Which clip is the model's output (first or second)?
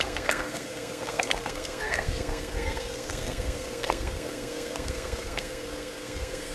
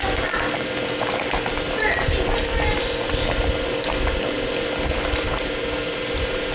first